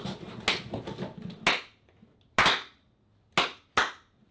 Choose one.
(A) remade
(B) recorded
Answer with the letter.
B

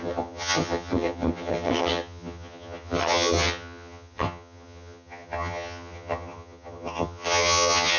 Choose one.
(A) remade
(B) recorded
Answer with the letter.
A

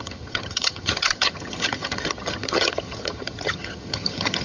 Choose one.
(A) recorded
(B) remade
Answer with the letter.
B